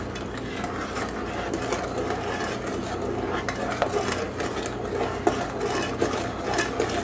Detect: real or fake real